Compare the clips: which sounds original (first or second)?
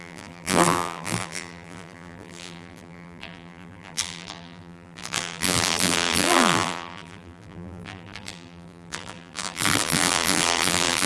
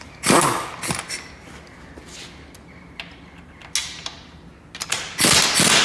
second